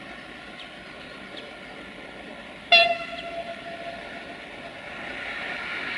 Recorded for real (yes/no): yes